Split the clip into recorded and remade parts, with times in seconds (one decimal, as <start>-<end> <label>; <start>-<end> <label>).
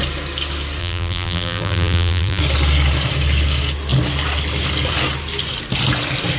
0.0-0.8 recorded; 0.8-2.4 remade; 2.4-6.4 recorded